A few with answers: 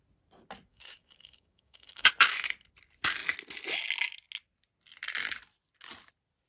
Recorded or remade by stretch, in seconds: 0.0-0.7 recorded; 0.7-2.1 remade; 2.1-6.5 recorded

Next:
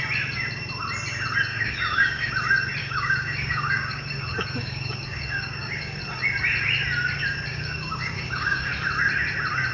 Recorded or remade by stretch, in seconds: 0.0-1.5 recorded; 1.5-2.3 remade; 2.3-2.8 recorded; 2.8-6.0 remade; 6.0-7.5 recorded; 7.5-8.7 remade; 8.7-9.7 recorded

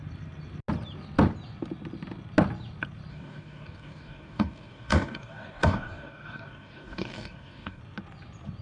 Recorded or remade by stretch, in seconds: 0.0-3.1 recorded; 3.1-7.8 remade; 7.8-8.6 recorded

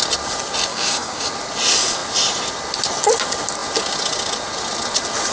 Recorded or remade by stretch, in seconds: 0.0-0.7 recorded; 0.7-1.3 remade; 1.3-5.3 recorded

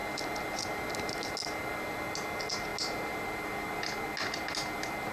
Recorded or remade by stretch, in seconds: 0.0-5.1 recorded

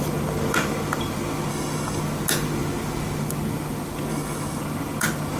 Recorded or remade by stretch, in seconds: 0.0-1.5 recorded; 1.5-2.0 remade; 2.0-4.1 recorded; 4.1-4.6 remade; 4.6-5.4 recorded